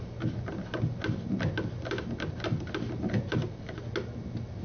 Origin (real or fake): real